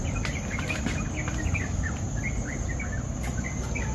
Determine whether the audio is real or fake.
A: real